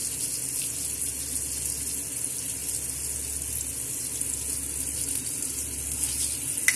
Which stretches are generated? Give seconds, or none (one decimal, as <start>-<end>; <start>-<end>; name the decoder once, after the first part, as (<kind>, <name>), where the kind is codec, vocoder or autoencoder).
none